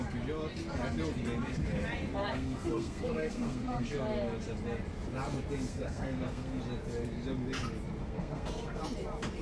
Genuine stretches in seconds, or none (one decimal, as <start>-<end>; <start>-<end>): 0.0-2.2; 4.0-5.7; 6.6-8.0; 8.8-9.4